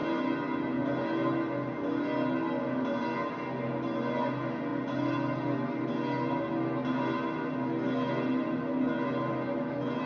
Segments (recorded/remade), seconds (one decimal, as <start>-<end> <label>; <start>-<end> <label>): 0.0-4.7 recorded; 4.7-5.9 remade; 5.9-10.1 recorded